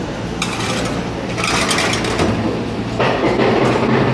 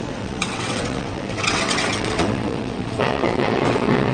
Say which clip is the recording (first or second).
first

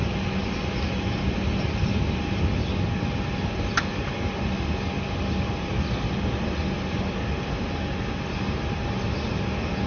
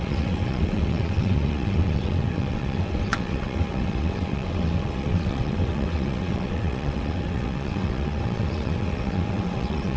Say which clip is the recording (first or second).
first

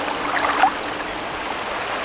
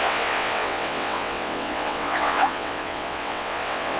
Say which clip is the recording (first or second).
first